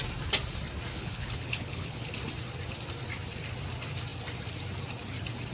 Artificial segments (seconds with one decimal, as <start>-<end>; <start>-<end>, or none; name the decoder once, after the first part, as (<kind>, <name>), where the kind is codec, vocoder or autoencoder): 0.9-2.1 (codec, HILCodec)